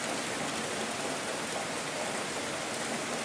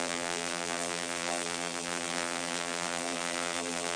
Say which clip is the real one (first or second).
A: first